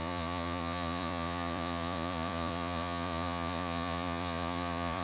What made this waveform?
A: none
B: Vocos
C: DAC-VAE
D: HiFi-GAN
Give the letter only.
B